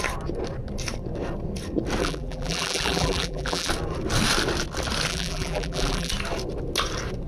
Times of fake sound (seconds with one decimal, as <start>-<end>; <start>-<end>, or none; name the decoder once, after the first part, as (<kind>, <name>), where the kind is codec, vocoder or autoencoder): 2.0-3.7 (vocoder, BigVGAN v2); 5.1-6.1